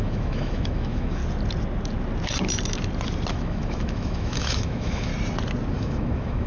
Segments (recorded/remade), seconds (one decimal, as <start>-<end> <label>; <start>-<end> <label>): 0.0-1.2 remade; 1.2-3.3 recorded; 3.3-5.1 remade; 5.1-5.7 recorded; 5.7-6.5 remade